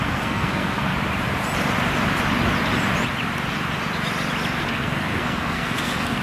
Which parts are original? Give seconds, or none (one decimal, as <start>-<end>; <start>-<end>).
0.9-4.6